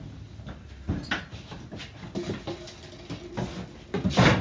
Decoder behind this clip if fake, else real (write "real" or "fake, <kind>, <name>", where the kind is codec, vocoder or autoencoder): real